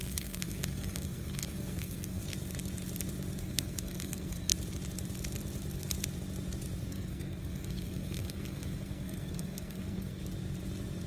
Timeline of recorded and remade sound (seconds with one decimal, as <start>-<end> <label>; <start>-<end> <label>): 0.0-2.2 remade; 2.2-3.4 recorded; 3.4-4.5 remade; 4.5-6.9 recorded; 6.9-10.2 remade; 10.2-11.1 recorded